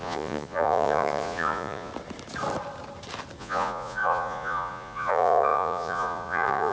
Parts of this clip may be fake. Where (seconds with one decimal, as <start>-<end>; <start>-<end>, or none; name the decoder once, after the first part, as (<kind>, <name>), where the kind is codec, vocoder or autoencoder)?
0.0-1.9 (vocoder, Vocos); 3.4-6.7